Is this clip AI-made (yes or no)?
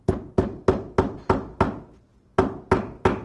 no